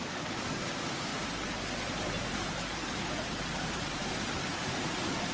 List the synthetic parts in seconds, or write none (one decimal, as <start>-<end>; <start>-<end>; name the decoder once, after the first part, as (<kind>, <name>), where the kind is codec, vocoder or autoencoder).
2.7-4.0 (vocoder, BigVGAN v2); 4.4-5.3